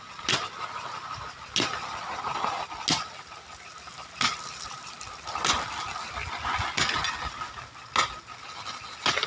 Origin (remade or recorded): recorded